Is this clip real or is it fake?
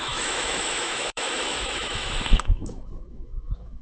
fake